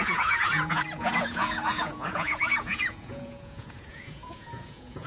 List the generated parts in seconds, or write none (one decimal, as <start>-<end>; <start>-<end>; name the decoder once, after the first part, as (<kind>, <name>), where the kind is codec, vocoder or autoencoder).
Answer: 0.0-5.1 (vocoder, Vocos)